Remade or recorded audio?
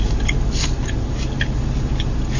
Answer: recorded